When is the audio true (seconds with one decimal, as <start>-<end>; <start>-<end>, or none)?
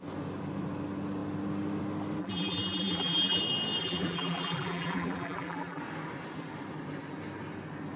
0.0-2.2; 3.4-3.8; 5.8-8.0